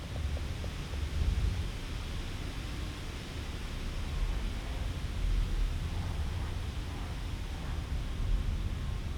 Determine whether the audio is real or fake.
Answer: real